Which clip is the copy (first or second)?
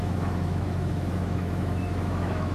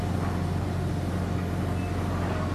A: first